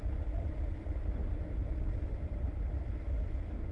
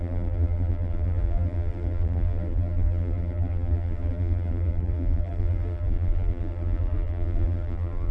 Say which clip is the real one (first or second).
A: first